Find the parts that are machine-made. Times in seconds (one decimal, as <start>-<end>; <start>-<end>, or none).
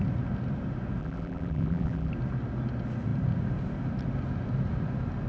1.0-2.1